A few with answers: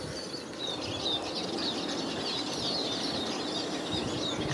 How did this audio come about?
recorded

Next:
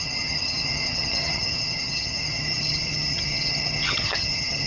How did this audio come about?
remade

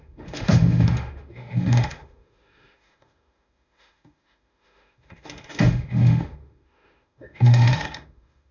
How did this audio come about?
remade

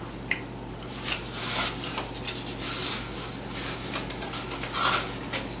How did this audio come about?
recorded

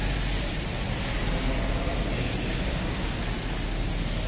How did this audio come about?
recorded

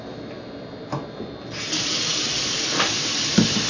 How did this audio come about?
recorded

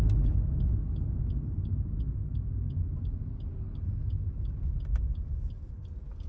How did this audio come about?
recorded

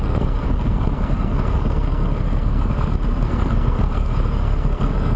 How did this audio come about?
remade